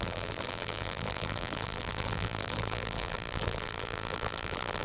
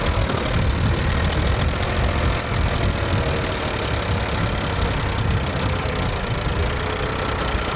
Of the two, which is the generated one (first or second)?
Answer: first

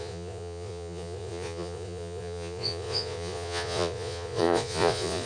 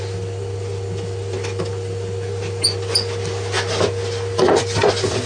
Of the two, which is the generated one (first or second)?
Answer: first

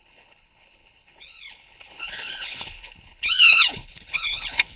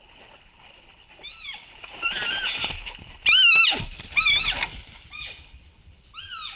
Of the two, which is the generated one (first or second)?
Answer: first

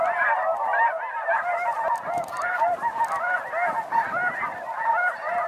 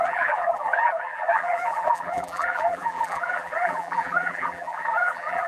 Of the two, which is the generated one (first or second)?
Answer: second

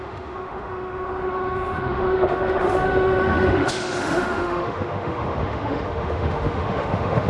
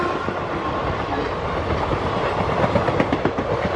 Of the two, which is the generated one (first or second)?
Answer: first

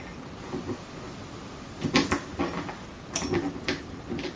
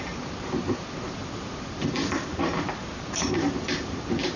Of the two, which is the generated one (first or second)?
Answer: second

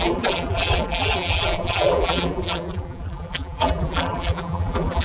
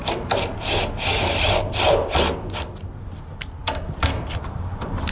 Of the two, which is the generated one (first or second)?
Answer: first